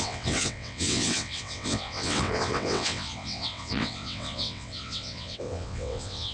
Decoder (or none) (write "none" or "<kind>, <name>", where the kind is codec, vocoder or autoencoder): vocoder, WaveNeXt